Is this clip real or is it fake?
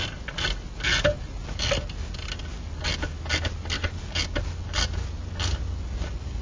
real